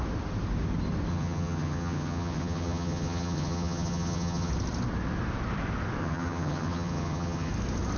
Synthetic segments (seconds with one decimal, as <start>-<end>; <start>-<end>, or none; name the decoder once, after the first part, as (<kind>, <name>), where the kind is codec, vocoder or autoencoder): 1.1-4.5 (vocoder, HiFi-GAN); 6.0-7.5